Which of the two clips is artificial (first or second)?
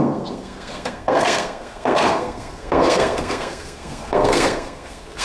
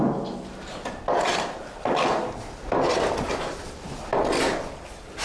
first